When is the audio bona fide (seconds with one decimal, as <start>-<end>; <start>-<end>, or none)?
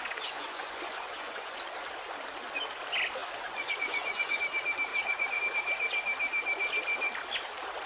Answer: 1.6-3.2; 4.4-4.9; 5.4-7.9